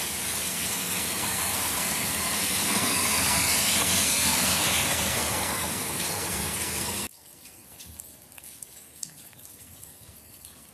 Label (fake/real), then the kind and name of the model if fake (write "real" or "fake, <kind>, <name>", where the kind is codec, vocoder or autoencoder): fake, codec, SNAC